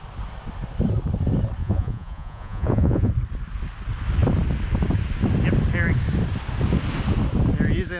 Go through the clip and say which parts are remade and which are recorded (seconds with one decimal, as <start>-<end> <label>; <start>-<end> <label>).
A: 0.0-1.6 recorded; 1.6-3.1 remade; 3.1-8.0 recorded